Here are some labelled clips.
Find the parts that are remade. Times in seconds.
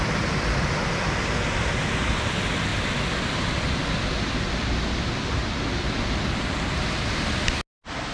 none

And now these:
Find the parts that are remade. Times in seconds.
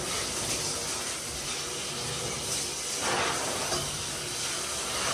none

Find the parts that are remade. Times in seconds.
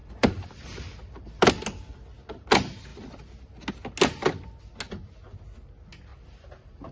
0.0-1.5 (vocoder, BigVGAN v2); 6.1-6.9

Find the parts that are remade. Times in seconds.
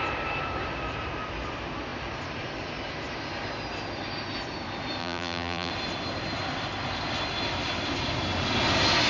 5.0-5.7 (vocoder, BigVGAN v2)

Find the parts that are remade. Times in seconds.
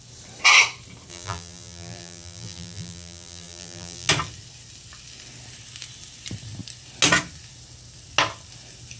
1.1-4.1 (vocoder, BigVGAN v2)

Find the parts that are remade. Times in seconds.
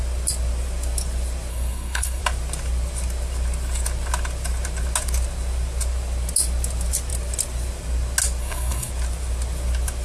1.5-2.2 (codec, SNAC); 8.4-8.9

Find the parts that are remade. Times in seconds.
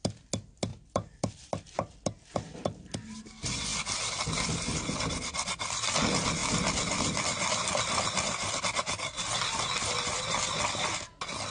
0.7-1.6 (vocoder, BigVGAN v2); 6.4-10.6